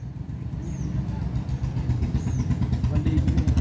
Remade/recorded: recorded